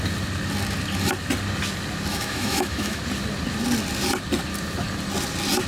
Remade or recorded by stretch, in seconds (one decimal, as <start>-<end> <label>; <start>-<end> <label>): 0.0-2.1 recorded; 2.1-3.0 remade; 3.0-5.7 recorded